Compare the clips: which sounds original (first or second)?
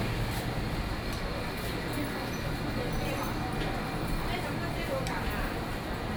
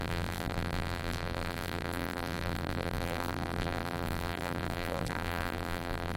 first